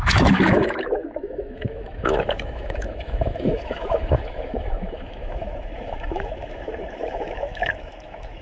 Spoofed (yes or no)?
yes